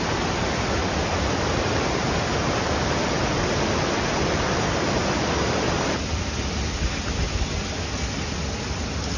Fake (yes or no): no